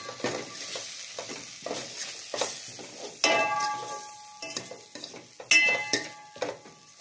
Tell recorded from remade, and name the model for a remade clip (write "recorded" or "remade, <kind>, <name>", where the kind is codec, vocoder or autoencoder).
recorded